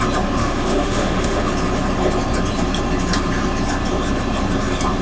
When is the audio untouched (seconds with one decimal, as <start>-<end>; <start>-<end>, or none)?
0.0-0.4; 1.5-5.0